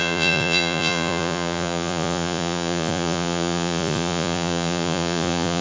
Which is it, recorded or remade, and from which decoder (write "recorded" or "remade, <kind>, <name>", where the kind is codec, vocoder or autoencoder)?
remade, vocoder, Vocos